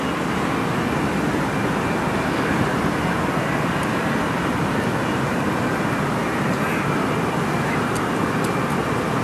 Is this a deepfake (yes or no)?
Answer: no